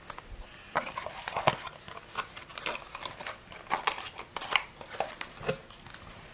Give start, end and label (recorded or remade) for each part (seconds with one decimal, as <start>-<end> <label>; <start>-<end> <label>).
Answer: 0.0-6.3 recorded